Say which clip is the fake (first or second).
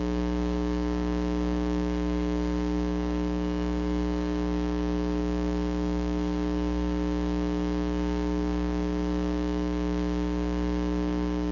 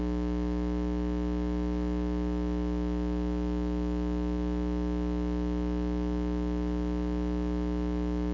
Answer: first